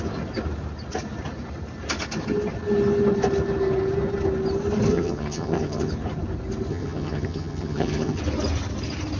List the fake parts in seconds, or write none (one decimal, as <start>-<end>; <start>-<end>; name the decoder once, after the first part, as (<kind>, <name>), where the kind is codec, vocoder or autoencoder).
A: 4.9-5.9 (vocoder, HiFi-GAN); 6.7-8.2